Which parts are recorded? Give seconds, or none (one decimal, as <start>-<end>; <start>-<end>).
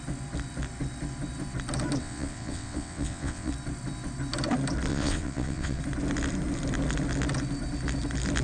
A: 0.0-2.0; 3.5-4.9; 5.8-8.4